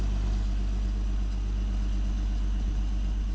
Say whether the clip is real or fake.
real